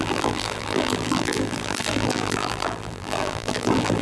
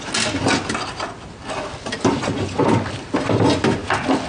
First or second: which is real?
second